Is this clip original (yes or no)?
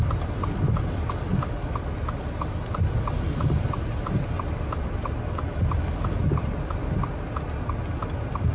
yes